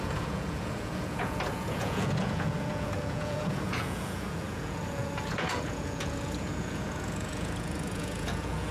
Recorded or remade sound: remade